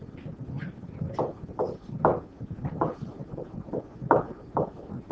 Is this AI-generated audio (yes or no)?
no